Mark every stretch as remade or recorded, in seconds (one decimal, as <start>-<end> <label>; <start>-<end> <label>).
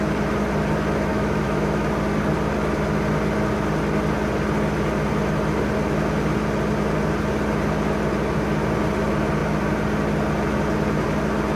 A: 0.0-1.1 recorded; 1.1-1.9 remade; 1.9-11.6 recorded